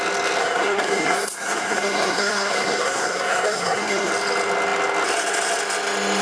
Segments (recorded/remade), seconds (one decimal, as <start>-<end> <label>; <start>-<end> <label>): 0.0-0.4 recorded; 0.4-4.1 remade; 4.1-6.2 recorded